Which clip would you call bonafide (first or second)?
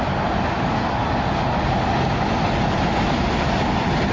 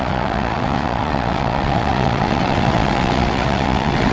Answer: first